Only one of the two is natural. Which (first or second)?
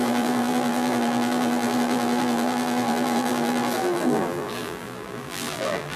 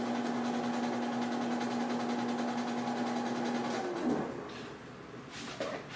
second